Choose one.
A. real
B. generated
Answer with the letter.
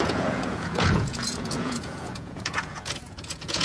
B